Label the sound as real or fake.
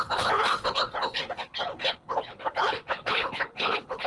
fake